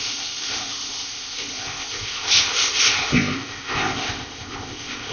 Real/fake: fake